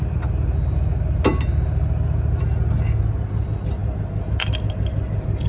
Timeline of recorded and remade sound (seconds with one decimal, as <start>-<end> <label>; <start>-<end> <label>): 0.0-5.5 recorded